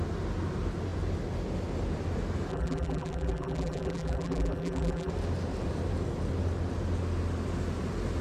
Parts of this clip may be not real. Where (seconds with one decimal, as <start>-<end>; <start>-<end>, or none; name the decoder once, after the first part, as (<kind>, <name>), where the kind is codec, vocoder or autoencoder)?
2.5-5.1 (vocoder, BigVGAN v2)